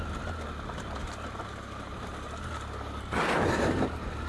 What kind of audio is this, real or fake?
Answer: real